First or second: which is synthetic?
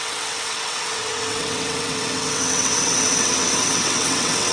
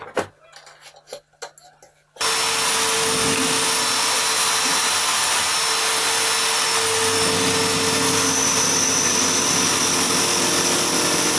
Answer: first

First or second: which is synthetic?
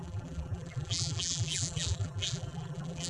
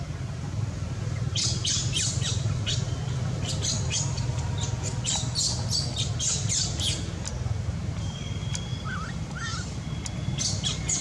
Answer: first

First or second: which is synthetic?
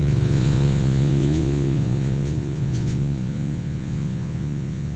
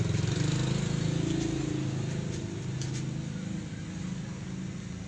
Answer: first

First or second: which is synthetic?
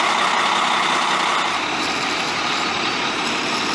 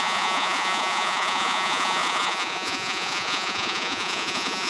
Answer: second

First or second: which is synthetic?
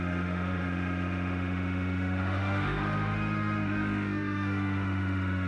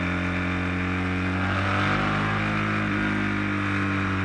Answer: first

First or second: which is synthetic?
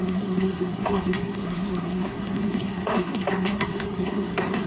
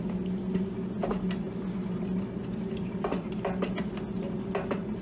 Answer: first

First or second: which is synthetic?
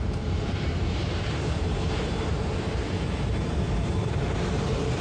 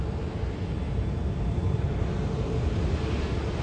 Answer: first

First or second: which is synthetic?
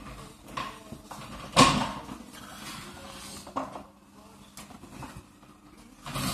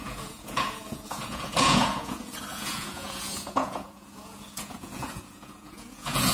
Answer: second